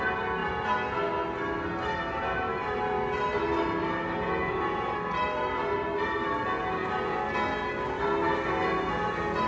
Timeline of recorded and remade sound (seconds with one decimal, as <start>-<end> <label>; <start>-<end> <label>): 0.0-9.5 recorded